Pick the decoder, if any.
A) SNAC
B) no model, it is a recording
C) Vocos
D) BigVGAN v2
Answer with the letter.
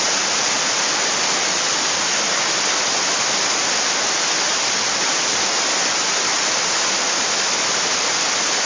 B